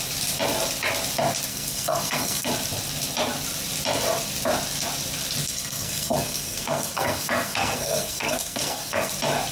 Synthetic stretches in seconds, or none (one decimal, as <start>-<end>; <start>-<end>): 1.5-2.5; 5.4-9.1